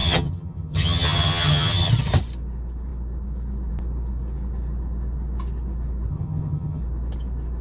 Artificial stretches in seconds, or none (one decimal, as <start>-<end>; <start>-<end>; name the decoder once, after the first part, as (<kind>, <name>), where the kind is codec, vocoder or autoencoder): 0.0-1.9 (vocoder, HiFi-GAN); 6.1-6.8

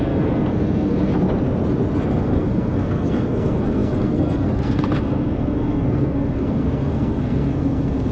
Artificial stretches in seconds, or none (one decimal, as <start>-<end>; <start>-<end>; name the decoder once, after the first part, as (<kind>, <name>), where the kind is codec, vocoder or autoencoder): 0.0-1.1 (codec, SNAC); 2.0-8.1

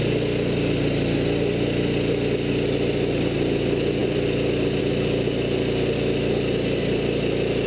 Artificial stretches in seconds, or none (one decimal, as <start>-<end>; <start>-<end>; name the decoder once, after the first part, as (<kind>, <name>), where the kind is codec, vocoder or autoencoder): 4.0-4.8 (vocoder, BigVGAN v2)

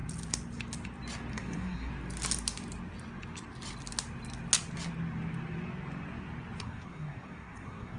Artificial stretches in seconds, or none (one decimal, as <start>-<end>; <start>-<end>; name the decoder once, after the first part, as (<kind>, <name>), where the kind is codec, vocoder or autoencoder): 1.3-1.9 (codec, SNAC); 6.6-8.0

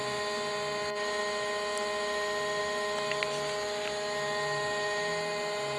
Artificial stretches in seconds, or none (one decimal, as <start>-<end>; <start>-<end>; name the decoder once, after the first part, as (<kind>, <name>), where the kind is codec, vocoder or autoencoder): none

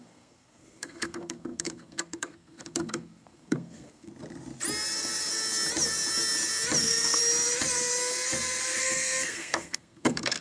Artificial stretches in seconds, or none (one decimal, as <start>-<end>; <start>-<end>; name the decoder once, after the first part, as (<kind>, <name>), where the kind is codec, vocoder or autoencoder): 0.0-4.1 (codec, SNAC); 6.8-7.2; 8.8-10.4

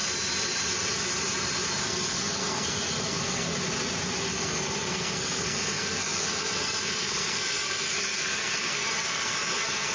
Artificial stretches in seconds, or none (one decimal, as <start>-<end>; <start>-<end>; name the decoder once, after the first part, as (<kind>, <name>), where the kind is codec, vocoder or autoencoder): 1.8-3.5 (codec, SNAC); 4.2-9.9

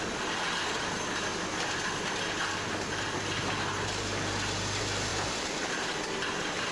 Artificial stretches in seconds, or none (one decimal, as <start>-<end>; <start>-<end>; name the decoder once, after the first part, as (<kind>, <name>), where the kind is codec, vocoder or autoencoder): 5.1-6.0 (vocoder, BigVGAN v2)